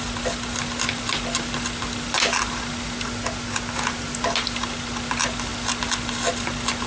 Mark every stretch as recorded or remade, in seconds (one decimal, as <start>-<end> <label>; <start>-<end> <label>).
0.0-6.9 recorded